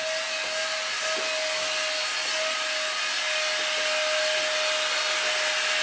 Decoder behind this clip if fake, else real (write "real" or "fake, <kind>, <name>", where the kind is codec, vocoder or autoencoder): real